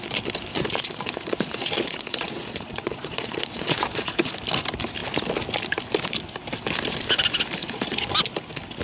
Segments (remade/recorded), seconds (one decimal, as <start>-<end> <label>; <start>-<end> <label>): 0.0-0.5 recorded; 0.5-4.3 remade; 4.3-7.6 recorded; 7.6-8.1 remade; 8.1-8.8 recorded